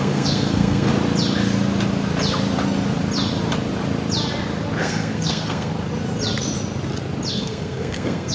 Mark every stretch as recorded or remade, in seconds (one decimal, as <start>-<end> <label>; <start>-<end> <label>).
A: 0.0-0.9 remade; 0.9-4.8 recorded; 4.8-5.7 remade; 5.7-7.3 recorded; 7.3-8.3 remade